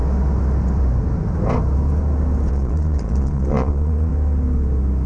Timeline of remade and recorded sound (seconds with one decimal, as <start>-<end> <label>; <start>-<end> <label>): 0.0-2.5 recorded; 2.5-4.1 remade; 4.1-5.1 recorded